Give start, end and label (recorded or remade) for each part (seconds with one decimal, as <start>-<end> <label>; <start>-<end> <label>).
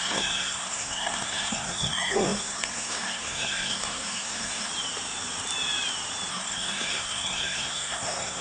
0.0-4.7 remade; 4.7-6.3 recorded; 6.3-8.4 remade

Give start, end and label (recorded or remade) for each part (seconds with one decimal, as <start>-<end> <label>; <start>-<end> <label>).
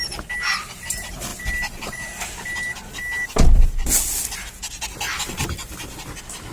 0.0-6.5 recorded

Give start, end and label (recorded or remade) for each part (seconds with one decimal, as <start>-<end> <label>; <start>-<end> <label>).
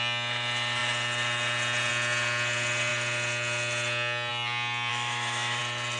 0.0-4.9 recorded; 4.9-5.6 remade; 5.6-6.0 recorded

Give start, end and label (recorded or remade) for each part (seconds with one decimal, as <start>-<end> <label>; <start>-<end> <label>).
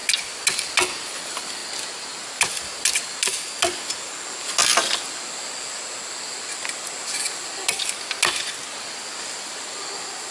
0.0-10.3 recorded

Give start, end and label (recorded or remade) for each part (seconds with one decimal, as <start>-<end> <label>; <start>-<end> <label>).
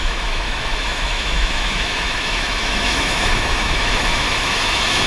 0.0-5.1 remade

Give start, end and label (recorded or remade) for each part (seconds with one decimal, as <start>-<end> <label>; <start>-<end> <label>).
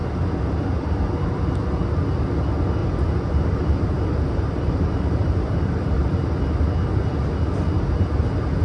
0.0-1.0 remade; 1.0-2.8 recorded; 2.8-6.3 remade; 6.3-8.6 recorded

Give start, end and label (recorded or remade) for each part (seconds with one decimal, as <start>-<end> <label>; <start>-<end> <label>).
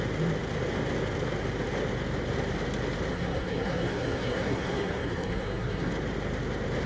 0.0-3.1 recorded; 3.1-5.9 remade; 5.9-6.9 recorded